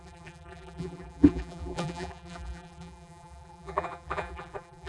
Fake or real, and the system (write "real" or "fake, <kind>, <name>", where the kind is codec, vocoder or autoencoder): fake, vocoder, BigVGAN v2